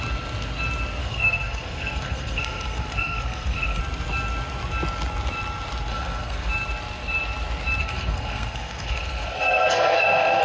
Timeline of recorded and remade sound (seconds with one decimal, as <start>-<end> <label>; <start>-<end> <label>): 0.0-1.0 recorded; 1.0-3.8 remade; 3.8-5.9 recorded; 5.9-6.5 remade; 6.5-7.8 recorded; 7.8-10.4 remade